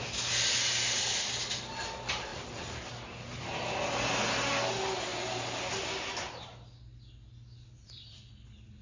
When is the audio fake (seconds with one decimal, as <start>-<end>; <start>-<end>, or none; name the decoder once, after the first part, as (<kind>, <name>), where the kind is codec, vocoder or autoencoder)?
none